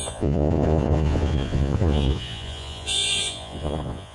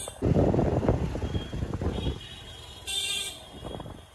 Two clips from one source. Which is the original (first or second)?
second